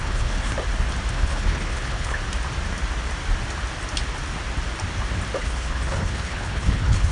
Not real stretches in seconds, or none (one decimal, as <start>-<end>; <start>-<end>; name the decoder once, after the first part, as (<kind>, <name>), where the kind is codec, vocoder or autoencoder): 0.0-0.5 (codec, HILCodec); 1.1-2.2; 5.4-7.1

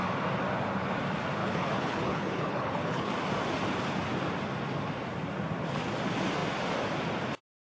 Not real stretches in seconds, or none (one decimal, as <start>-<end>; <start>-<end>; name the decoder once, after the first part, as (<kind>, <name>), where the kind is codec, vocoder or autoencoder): 1.4-3.1 (codec, HILCodec)

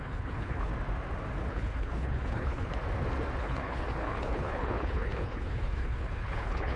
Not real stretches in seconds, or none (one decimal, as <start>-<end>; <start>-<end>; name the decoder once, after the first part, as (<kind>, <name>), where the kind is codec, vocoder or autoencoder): 0.0-0.7 (codec, HILCodec); 1.5-2.7; 3.4-6.8

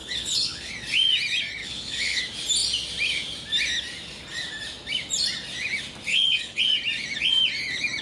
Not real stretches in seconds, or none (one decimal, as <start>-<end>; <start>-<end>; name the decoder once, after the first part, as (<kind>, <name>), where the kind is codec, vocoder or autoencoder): 0.0-0.7 (codec, HILCodec); 1.6-2.2; 6.1-6.6